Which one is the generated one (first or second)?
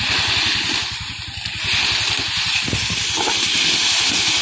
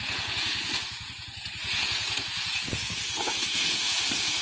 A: second